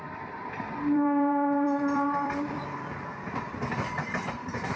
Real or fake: fake